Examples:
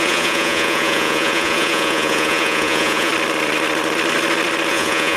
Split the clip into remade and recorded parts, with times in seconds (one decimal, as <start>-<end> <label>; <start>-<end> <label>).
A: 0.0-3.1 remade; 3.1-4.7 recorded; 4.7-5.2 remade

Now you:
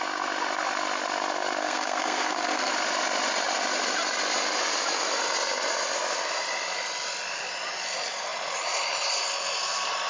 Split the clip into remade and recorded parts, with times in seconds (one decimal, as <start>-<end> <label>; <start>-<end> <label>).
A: 0.0-1.6 recorded; 1.6-2.7 remade; 2.7-10.1 recorded

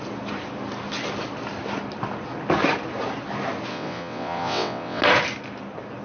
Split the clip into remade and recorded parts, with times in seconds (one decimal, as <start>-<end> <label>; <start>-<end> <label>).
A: 0.0-3.7 recorded; 3.7-5.0 remade; 5.0-6.0 recorded

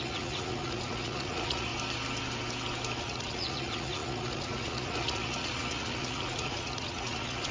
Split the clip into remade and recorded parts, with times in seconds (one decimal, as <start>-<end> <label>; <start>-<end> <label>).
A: 0.0-1.7 remade; 1.7-3.0 recorded; 3.0-7.5 remade

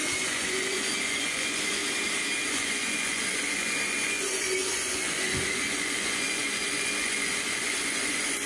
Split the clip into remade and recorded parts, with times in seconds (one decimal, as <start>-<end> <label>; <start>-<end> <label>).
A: 0.0-1.8 remade; 1.8-2.4 recorded; 2.4-8.5 remade

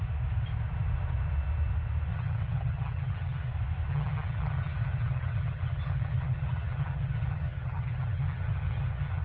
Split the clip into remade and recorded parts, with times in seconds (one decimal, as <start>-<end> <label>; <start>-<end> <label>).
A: 0.0-2.1 recorded; 2.1-3.5 remade; 3.5-3.9 recorded; 3.9-9.2 remade

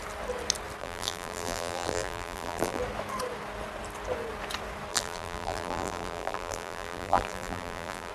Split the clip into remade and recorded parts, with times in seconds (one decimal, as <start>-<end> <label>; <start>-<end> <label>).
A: 0.0-0.8 recorded; 0.8-2.8 remade; 2.8-4.9 recorded; 4.9-8.1 remade